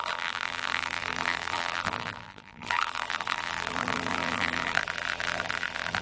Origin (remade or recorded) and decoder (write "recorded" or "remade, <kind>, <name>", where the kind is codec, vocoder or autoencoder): remade, vocoder, BigVGAN v2